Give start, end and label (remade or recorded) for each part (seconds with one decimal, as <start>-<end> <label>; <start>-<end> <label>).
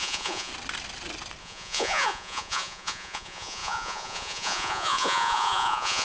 0.0-0.5 remade; 0.5-1.4 recorded; 1.4-6.0 remade